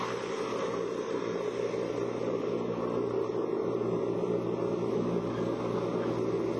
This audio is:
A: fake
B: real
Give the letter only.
B